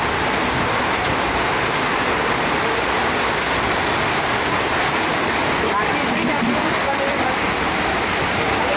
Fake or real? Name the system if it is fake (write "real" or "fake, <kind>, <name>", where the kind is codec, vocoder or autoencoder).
real